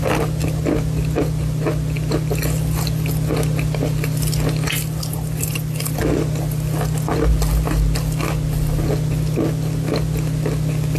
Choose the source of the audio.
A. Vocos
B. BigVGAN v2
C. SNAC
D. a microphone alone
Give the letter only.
D